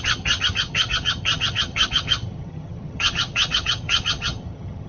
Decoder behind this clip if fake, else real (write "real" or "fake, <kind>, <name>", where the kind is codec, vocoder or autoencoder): fake, vocoder, HiFi-GAN